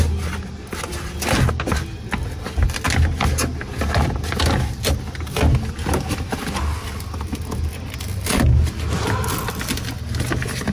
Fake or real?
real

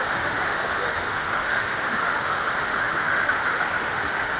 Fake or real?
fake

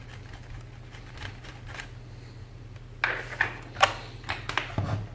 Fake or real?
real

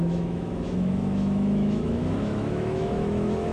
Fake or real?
fake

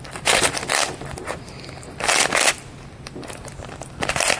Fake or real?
real